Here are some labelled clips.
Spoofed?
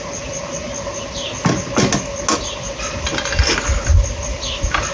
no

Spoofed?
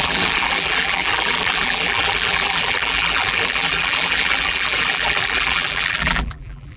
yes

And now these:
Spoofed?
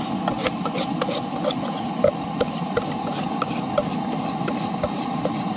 no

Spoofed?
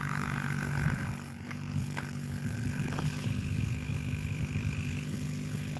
yes